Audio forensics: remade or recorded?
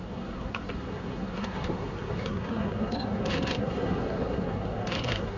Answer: remade